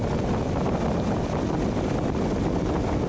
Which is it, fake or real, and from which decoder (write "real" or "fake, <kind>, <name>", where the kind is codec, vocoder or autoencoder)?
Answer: real